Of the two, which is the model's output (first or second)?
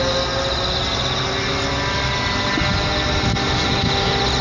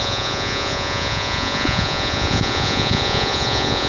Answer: second